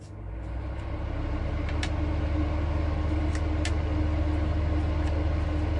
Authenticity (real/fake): real